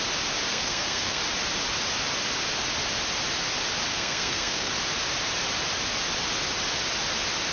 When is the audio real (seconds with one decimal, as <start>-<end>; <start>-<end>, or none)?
0.0-0.5; 1.2-3.9; 4.7-7.5